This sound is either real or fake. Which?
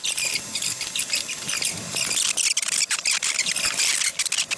real